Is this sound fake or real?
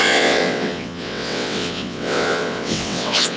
fake